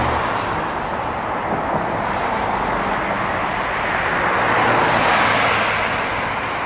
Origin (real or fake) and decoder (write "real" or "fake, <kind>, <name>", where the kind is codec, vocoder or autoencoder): real